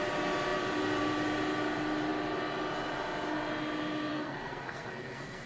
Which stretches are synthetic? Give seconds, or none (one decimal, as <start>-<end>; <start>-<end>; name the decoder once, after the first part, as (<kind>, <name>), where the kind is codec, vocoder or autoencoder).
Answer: 4.1-5.5 (codec, SNAC)